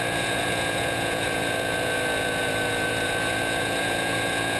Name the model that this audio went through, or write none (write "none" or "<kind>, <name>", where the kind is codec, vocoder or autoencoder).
vocoder, Vocos